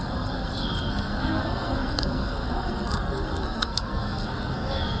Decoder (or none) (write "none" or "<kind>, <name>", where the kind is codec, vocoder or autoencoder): codec, SNAC